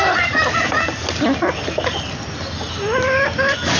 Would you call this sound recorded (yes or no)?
yes